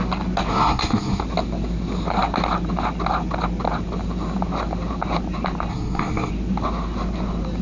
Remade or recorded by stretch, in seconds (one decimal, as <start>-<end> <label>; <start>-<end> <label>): 0.0-0.5 recorded; 0.5-1.2 remade; 1.2-5.7 recorded; 5.7-6.3 remade; 6.3-7.6 recorded